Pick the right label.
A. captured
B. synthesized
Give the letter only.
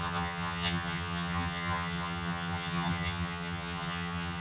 B